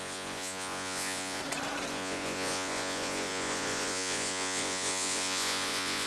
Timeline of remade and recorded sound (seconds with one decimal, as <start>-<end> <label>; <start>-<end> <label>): 0.0-1.4 remade; 1.4-1.9 recorded; 1.9-6.1 remade